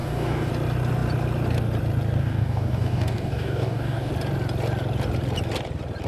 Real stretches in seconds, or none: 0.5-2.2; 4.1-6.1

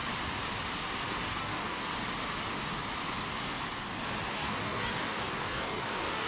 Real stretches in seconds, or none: 0.0-1.3; 1.8-4.3

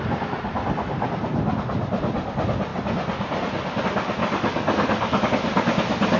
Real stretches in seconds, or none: 0.0-4.2; 5.3-6.2

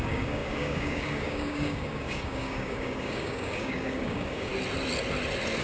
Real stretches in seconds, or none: 4.5-5.6

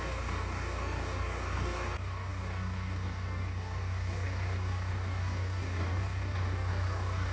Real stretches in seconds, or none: none

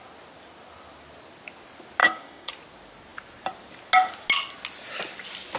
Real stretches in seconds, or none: 0.0-2.0; 2.5-5.6

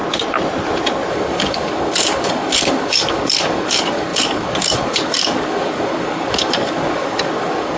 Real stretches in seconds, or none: 0.0-1.1